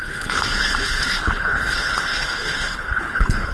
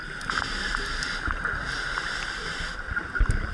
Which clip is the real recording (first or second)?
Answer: second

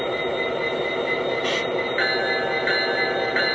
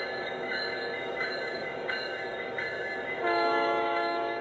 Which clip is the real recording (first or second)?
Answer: first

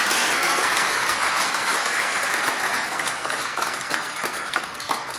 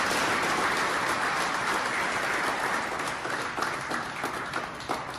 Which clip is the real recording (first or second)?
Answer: second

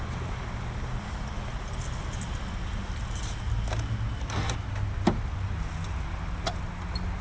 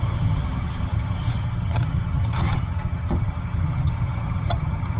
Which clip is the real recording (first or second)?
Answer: first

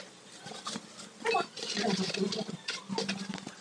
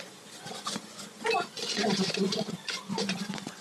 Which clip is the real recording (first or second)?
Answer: first